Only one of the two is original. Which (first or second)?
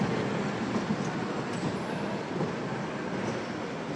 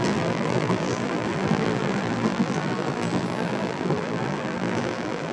first